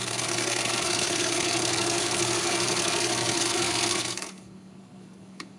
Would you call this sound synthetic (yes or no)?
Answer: yes